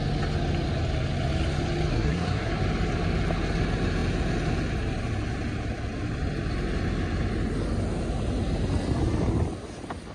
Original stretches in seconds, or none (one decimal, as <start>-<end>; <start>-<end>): 0.0-1.9; 2.5-10.1